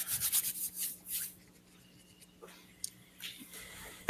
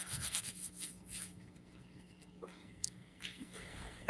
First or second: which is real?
first